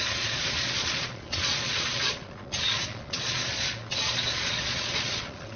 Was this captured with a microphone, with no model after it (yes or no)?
no